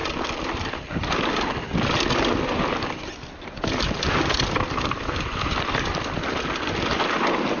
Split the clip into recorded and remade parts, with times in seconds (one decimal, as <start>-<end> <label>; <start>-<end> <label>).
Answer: 0.0-7.6 recorded